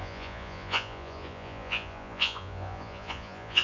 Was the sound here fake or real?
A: fake